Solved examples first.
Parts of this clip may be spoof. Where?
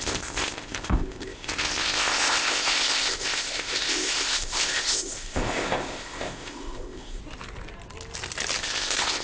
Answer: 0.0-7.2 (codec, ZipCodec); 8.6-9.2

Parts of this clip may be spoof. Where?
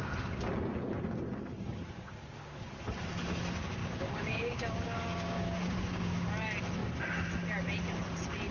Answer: 1.5-2.7 (codec, DAC); 3.8-6.3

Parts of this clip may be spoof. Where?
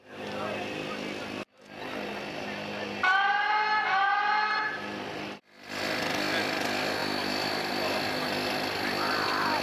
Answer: none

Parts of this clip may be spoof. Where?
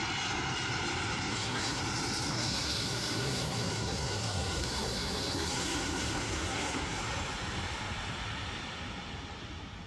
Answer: 1.3-1.8 (codec, SNAC); 2.3-7.0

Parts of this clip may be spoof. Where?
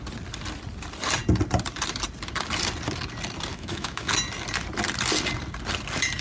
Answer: 3.5-4.1 (autoencoder, DAC-VAE)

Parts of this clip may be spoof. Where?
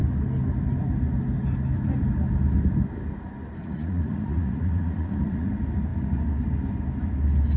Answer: 3.6-5.5 (vocoder, Vocos)